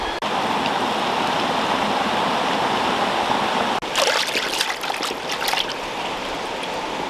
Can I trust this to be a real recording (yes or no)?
yes